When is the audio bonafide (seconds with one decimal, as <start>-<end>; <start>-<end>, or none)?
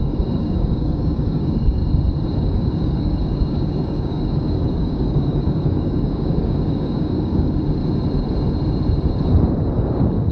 1.8-2.4; 7.8-9.8